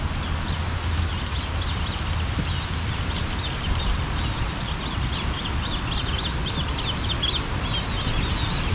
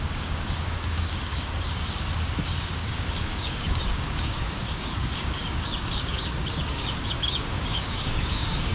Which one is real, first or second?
first